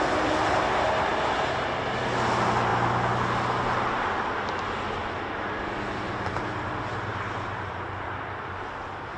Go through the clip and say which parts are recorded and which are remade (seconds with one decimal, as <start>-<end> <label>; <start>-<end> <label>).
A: 0.0-7.1 recorded; 7.1-8.3 remade; 8.3-9.2 recorded